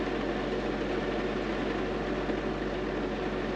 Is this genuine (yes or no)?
yes